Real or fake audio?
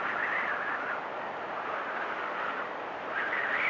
real